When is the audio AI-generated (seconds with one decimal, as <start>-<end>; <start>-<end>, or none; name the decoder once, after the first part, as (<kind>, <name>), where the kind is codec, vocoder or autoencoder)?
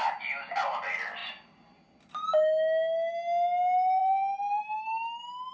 4.0-4.6 (vocoder, BigVGAN v2)